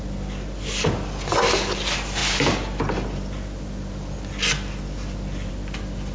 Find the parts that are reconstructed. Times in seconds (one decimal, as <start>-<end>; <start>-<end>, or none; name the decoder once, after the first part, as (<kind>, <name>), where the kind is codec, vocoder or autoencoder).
none